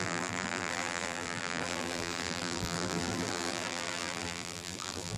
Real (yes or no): no